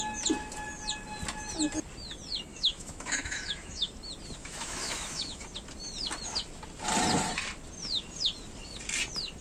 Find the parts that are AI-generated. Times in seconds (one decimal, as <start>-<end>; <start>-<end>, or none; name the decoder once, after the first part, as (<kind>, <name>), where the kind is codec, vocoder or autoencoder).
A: 2.5-3.9 (autoencoder, DAC-VAE); 4.4-5.4